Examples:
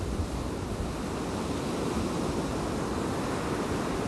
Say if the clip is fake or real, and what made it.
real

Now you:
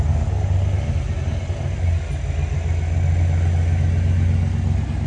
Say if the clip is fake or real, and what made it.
real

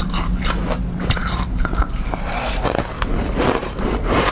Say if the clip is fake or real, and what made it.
fake, vocoder, BigVGAN v2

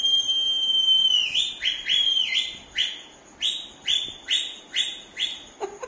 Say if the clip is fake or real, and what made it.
real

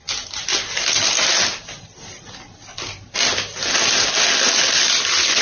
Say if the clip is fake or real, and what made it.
real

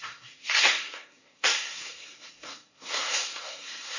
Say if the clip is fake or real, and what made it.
fake, codec, SNAC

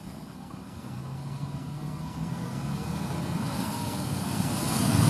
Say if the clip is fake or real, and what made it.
fake, codec, SNAC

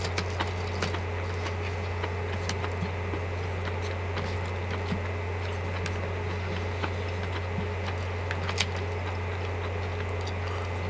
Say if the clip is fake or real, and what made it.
real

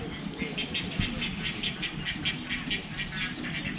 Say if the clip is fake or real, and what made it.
real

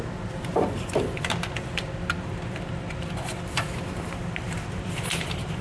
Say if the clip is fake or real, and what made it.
real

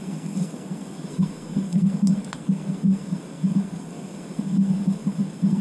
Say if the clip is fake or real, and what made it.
fake, codec, SNAC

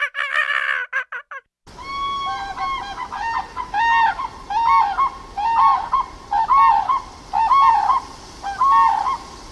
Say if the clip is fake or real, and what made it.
real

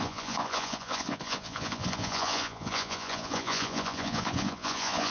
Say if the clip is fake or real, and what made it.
fake, vocoder, Vocos